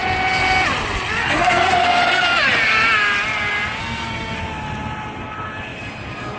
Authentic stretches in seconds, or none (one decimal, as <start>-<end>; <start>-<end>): 0.0-1.2; 2.0-3.8; 4.4-6.4